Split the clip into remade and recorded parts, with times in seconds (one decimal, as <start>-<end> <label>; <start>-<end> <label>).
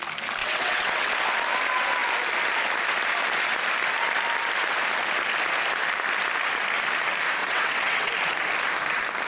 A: 0.0-0.4 recorded; 0.4-1.1 remade; 1.1-7.4 recorded; 7.4-8.1 remade; 8.1-9.3 recorded